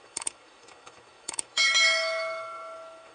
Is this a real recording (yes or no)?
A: no